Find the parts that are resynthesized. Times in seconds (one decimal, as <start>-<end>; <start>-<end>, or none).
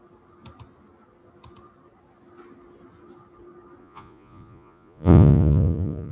3.8-6.1